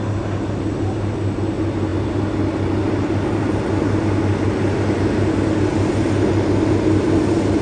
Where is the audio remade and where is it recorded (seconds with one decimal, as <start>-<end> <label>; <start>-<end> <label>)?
0.0-7.6 recorded

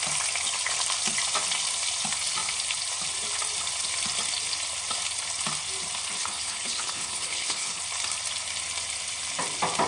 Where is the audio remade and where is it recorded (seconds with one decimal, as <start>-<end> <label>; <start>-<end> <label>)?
0.0-6.2 recorded; 6.2-7.8 remade; 7.8-9.9 recorded